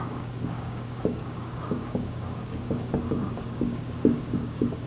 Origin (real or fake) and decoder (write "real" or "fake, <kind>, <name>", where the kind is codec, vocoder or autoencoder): fake, codec, DAC